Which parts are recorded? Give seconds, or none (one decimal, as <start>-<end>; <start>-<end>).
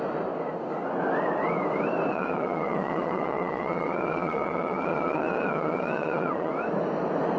0.0-2.1; 6.5-7.4